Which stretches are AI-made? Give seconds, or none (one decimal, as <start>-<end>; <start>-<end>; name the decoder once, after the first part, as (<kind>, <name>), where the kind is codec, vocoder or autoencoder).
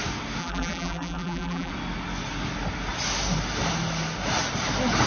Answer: 0.4-1.7 (vocoder, BigVGAN v2)